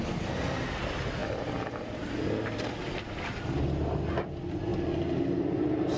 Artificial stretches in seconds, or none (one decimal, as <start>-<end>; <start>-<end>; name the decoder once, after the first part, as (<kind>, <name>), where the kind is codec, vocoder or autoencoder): none